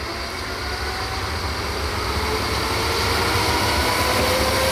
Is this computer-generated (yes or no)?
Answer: no